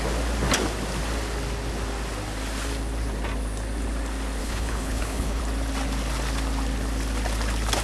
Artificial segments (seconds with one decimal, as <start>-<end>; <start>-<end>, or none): 4.4-5.4

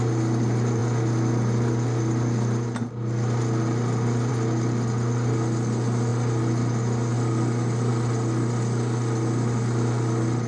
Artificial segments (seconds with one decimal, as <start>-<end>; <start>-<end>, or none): none

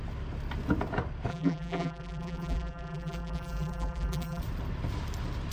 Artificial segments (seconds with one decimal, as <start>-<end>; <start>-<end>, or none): 1.3-4.4

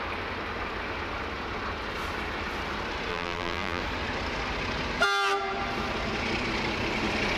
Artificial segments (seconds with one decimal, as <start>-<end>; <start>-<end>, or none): 3.1-3.8

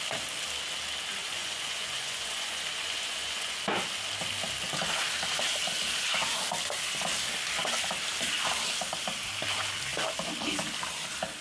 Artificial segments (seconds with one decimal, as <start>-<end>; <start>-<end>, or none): 1.2-3.6

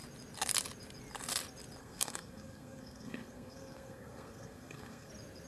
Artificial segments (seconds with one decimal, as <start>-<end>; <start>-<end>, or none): 1.8-5.1

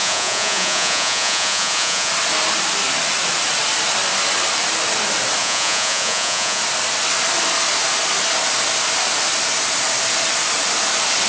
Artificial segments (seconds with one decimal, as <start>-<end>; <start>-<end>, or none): 0.0-2.1; 5.4-6.6